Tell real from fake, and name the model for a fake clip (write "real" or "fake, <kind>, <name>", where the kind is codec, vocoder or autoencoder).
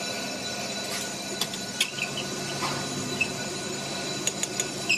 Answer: real